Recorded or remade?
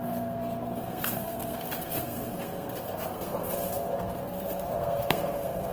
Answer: remade